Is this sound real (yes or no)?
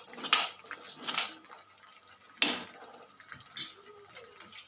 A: yes